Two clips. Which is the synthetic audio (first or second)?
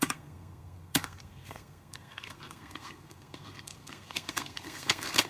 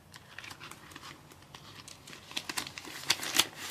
first